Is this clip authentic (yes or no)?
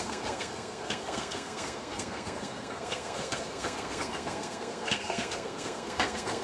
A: no